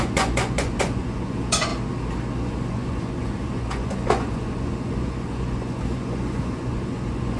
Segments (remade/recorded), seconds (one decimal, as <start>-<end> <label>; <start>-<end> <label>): 0.0-1.7 remade; 1.7-2.4 recorded; 2.4-7.4 remade